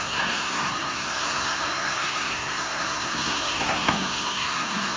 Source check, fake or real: fake